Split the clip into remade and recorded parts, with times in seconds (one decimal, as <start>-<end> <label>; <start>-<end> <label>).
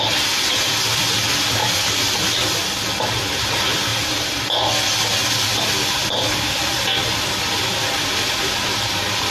0.0-1.6 recorded; 1.6-2.3 remade; 2.3-9.3 recorded